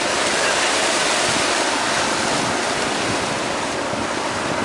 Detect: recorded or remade remade